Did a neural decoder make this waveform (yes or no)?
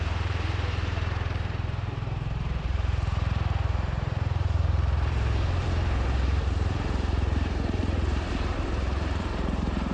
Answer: yes